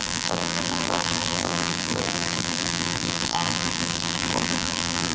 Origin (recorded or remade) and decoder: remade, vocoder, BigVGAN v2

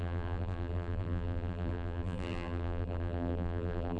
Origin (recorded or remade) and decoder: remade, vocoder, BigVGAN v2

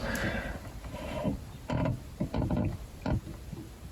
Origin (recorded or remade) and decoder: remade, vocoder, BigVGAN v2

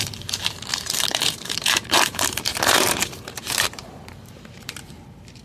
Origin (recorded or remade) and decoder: remade, vocoder, BigVGAN v2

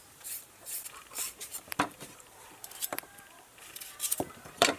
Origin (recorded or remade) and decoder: remade, vocoder, BigVGAN v2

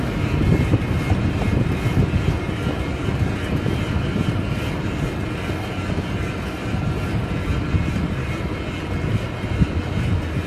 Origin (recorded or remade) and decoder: recorded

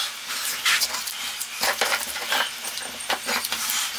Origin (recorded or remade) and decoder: recorded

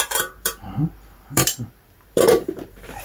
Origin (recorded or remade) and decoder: remade, vocoder, BigVGAN v2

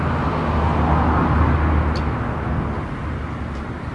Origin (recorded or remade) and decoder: recorded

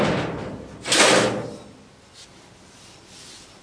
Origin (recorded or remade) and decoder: recorded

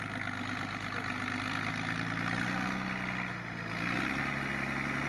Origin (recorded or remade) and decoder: recorded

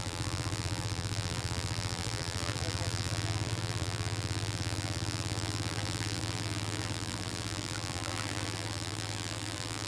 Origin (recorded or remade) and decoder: remade, vocoder, BigVGAN v2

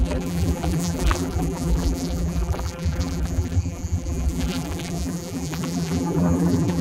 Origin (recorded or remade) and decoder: remade, vocoder, BigVGAN v2